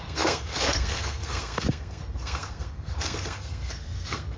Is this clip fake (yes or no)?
yes